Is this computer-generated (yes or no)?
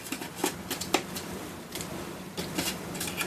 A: no